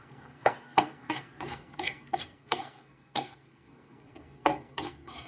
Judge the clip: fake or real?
fake